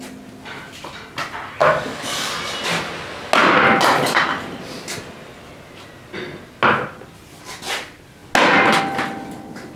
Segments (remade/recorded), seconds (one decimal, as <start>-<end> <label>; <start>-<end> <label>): 0.0-1.6 recorded; 1.6-2.3 remade; 2.3-9.8 recorded

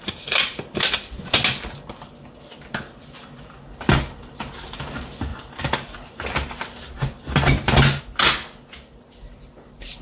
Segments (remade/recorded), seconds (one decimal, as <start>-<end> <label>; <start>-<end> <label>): 0.0-10.0 recorded

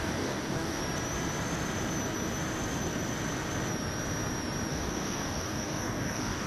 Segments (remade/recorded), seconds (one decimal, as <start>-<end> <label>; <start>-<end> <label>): 0.0-0.8 remade; 0.8-4.7 recorded; 4.7-6.5 remade

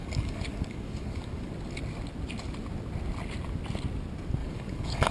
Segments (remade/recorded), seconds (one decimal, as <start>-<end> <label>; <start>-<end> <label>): 0.0-1.5 remade; 1.5-4.4 recorded; 4.4-5.1 remade